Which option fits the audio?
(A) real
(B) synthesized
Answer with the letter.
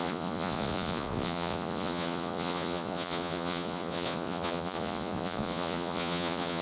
B